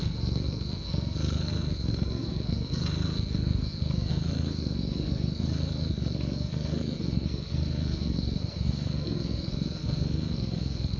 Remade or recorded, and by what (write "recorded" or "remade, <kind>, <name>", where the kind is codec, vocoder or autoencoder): remade, codec, SNAC